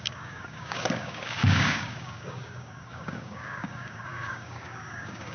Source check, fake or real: fake